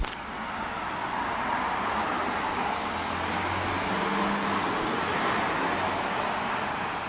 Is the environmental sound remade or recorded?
recorded